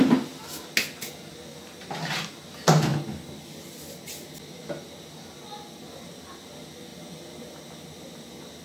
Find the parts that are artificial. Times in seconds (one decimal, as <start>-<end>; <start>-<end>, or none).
6.9-7.7